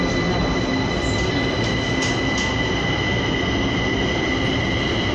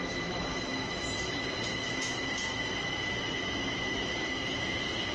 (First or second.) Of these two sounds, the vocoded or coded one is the second